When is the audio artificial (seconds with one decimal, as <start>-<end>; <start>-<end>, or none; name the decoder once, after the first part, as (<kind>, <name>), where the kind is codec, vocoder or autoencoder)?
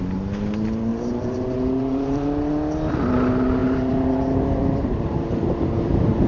0.9-2.5 (vocoder, BigVGAN v2); 3.6-6.3